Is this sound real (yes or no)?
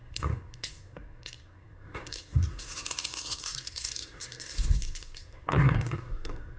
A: no